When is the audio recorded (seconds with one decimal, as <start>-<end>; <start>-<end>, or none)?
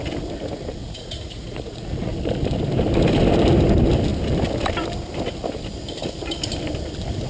0.0-0.8; 2.1-7.3